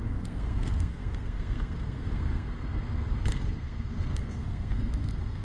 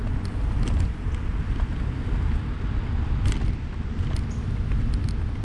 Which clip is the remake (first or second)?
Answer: first